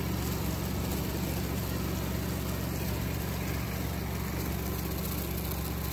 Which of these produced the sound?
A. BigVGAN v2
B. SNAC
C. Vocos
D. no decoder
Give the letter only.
D